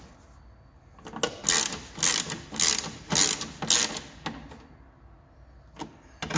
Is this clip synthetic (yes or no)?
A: no